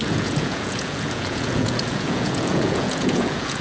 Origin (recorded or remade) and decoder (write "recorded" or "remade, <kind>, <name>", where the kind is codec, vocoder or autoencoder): remade, vocoder, Vocos